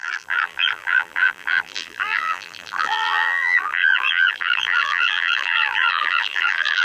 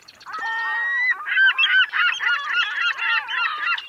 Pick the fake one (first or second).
first